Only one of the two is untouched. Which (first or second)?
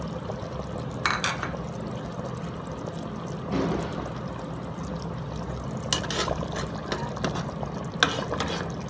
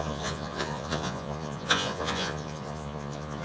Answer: first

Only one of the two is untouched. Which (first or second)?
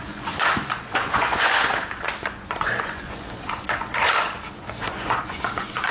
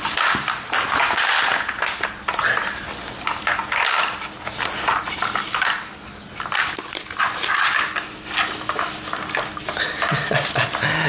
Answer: second